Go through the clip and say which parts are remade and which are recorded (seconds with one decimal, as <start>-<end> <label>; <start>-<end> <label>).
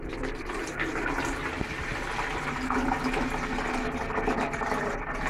0.0-5.3 recorded